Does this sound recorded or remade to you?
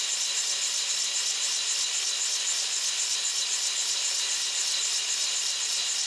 remade